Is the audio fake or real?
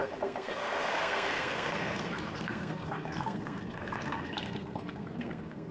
fake